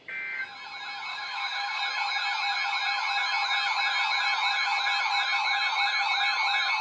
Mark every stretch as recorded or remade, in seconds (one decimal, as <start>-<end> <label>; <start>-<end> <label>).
0.0-1.1 recorded; 1.1-1.8 remade; 1.8-6.8 recorded